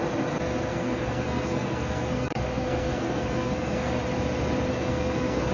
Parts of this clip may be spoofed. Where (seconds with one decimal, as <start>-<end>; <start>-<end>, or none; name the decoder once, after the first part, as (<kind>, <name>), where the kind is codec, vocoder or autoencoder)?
0.7-4.0 (codec, SNAC); 4.7-5.5